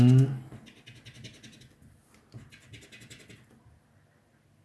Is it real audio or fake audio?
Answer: real